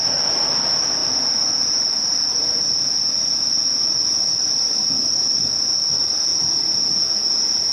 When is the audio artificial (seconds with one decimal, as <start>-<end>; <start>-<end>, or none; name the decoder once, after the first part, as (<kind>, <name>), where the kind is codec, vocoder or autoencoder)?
none